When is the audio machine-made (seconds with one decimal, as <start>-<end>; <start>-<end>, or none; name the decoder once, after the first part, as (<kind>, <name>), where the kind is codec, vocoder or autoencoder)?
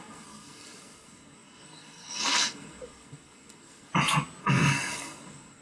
0.0-3.9 (codec, SNAC); 4.4-5.6